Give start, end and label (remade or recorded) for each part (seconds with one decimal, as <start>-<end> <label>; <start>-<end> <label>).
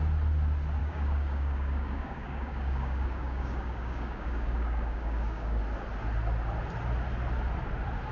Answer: 0.0-0.8 recorded; 0.8-5.6 remade; 5.6-8.1 recorded